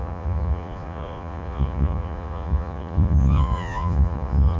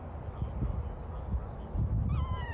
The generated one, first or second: first